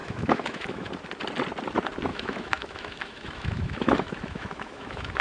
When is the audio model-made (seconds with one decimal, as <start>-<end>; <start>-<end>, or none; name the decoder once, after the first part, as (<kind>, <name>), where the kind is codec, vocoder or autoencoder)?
0.0-0.9 (autoencoder, DAC-VAE); 2.1-5.2